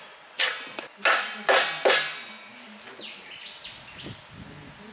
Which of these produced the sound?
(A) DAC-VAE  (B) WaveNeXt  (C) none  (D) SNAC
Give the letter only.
C